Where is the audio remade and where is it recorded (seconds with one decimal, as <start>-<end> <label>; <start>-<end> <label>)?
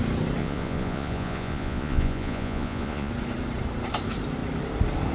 0.0-0.4 recorded; 0.4-3.1 remade; 3.1-5.1 recorded